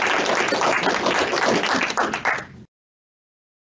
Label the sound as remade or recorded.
recorded